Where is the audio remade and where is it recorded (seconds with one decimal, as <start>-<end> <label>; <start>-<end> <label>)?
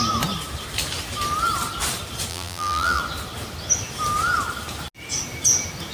0.0-2.3 recorded; 2.3-3.0 remade; 3.0-5.9 recorded